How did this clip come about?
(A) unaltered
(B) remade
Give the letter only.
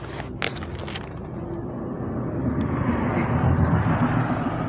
A